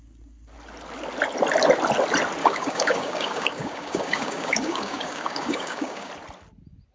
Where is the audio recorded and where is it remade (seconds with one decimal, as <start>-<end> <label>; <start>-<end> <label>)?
0.0-2.4 recorded; 2.4-6.1 remade; 6.1-6.9 recorded